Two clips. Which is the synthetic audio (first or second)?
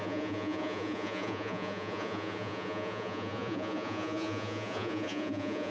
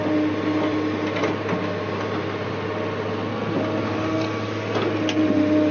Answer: first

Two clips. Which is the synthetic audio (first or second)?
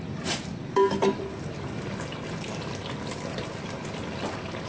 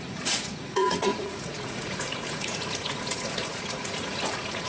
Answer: second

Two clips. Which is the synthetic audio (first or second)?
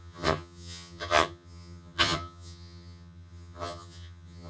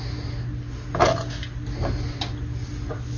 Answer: first